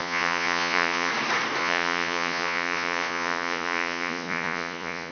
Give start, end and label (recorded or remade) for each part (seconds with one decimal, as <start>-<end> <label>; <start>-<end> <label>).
0.0-1.1 remade; 1.1-1.6 recorded; 1.6-5.1 remade